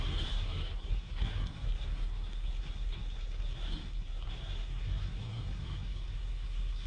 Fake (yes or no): yes